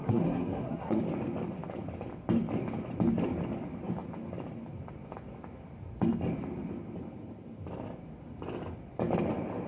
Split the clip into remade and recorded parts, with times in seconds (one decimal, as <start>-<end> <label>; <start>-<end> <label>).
0.0-1.0 remade; 1.0-9.7 recorded